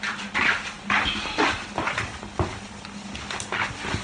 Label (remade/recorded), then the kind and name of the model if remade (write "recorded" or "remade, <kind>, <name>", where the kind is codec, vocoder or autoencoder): recorded